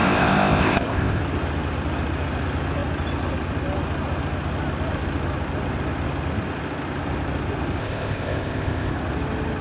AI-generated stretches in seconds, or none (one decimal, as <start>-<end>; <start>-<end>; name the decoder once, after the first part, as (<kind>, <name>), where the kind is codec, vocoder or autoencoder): 0.0-1.2 (codec, ZipCodec); 7.8-8.9